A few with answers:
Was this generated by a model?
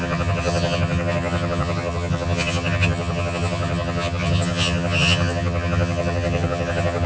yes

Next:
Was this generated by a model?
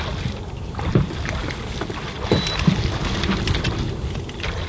no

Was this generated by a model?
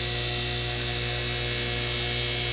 no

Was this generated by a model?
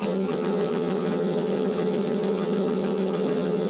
yes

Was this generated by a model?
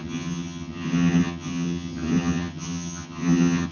yes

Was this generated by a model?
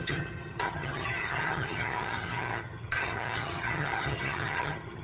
yes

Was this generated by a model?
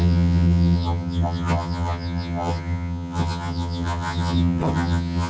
yes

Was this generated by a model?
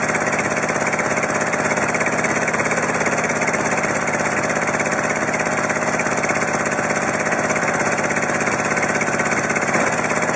no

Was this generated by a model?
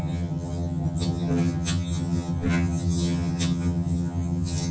yes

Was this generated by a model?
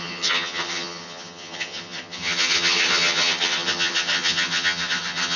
yes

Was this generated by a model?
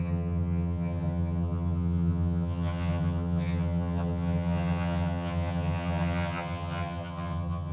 yes